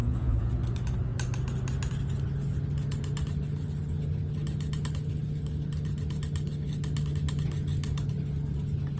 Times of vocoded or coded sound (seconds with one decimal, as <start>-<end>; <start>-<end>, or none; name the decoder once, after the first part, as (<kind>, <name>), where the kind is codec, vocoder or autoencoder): 0.0-0.5 (vocoder, Vocos)